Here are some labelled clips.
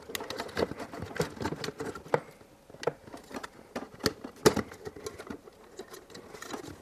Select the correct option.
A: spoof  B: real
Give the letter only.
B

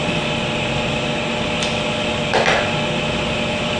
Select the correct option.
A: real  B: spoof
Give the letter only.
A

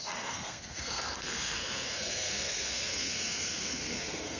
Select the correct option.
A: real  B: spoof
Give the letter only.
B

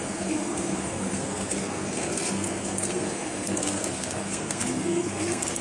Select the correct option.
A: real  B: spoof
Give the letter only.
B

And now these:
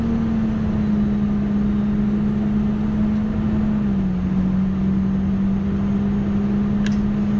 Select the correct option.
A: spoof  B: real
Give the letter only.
B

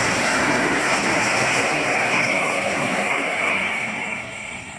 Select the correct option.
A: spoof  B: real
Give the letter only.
A